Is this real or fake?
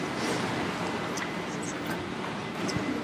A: real